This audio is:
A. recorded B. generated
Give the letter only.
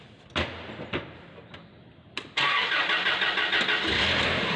A